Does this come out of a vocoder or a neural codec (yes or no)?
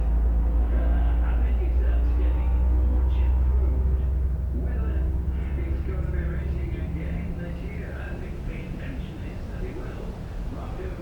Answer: no